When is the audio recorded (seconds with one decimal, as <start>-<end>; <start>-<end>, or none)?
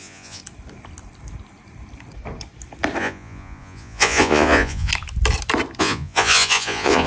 0.4-3.0; 4.9-5.8